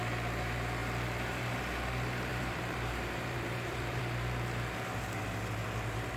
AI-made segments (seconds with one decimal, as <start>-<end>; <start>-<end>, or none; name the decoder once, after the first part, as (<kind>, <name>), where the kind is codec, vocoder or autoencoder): 2.3-4.0 (vocoder, BigVGAN v2)